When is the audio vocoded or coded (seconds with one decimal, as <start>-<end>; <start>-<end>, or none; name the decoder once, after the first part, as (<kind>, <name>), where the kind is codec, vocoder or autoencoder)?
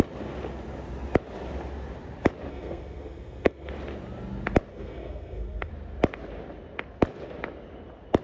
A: 2.5-3.7 (codec, SNAC); 4.7-5.7